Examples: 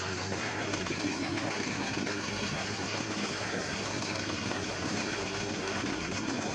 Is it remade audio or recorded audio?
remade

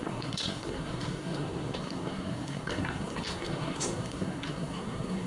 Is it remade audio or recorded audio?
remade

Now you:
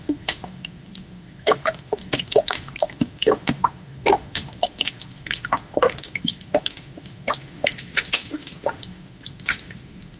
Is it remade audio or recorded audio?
remade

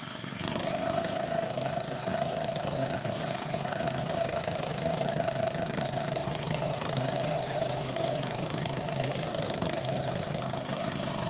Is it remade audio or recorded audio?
remade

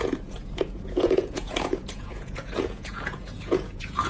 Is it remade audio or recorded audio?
remade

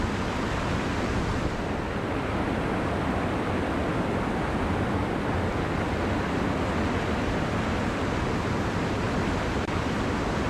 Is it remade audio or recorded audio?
recorded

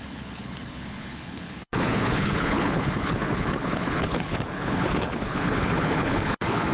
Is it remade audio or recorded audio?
remade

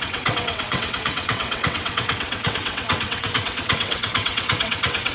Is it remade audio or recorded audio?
remade